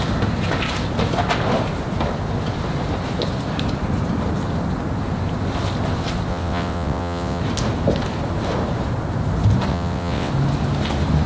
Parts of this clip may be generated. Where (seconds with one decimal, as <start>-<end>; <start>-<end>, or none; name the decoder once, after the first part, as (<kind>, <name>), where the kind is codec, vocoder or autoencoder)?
6.3-7.4 (vocoder, WaveNeXt); 9.7-10.3